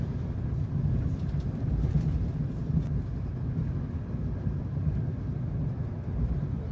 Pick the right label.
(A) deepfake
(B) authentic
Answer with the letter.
B